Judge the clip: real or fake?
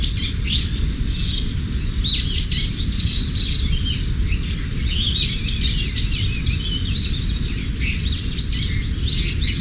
real